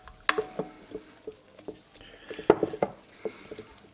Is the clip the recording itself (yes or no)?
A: yes